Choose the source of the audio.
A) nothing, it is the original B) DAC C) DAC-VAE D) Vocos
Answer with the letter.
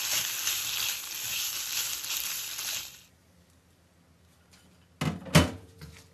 A